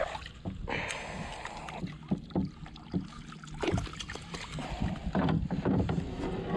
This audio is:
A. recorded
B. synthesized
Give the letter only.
A